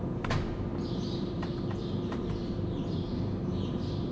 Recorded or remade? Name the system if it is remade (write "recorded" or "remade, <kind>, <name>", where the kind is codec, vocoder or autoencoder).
remade, vocoder, BigVGAN v2